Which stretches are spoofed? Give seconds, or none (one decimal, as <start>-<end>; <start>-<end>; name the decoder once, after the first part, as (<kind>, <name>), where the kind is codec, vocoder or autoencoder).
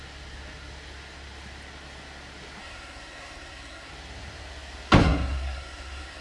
2.6-3.9 (codec, SNAC); 5.0-6.2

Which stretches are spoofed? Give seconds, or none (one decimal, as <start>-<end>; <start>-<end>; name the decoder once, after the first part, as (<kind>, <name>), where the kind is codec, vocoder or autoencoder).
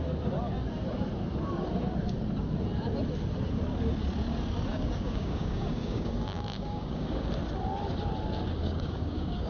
4.7-7.3 (codec, DAC); 8.6-9.5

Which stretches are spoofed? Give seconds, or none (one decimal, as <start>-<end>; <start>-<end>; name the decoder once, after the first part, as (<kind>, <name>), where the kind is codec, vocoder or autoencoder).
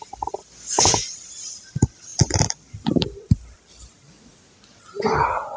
0.0-0.4 (vocoder, BigVGAN v2); 0.9-4.3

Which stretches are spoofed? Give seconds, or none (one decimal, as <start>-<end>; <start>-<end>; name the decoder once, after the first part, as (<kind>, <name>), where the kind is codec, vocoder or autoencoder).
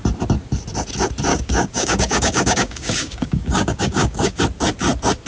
1.3-4.4 (codec, DAC)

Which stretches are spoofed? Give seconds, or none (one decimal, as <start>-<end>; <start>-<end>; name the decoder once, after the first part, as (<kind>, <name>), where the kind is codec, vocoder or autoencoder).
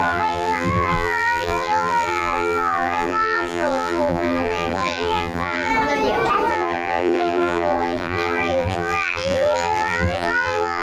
0.0-5.7 (vocoder, BigVGAN v2); 6.5-10.8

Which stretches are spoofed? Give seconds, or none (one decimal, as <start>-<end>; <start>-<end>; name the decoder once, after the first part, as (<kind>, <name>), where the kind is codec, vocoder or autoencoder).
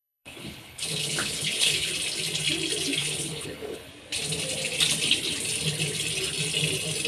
0.0-1.9 (codec, HILCodec); 3.0-3.9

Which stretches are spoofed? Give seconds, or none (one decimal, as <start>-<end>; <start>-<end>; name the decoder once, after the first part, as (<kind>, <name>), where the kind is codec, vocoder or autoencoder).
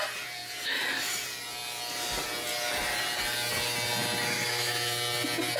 none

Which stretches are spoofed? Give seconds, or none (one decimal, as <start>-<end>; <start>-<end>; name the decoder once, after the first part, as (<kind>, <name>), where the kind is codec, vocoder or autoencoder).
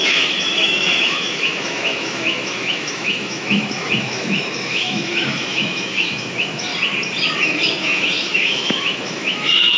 0.0-6.7 (autoencoder, DAC-VAE); 7.4-9.8